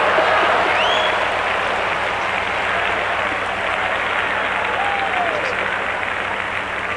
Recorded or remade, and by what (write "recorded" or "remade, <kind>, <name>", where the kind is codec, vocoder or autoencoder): recorded